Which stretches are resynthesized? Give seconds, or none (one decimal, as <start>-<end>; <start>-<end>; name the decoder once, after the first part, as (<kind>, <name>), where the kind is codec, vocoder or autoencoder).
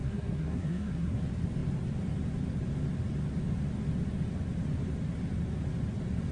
0.0-1.2 (codec, SNAC)